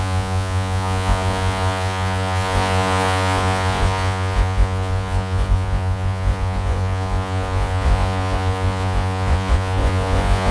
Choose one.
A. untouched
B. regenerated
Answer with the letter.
B